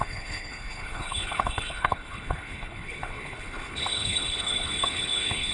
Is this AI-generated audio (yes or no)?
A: yes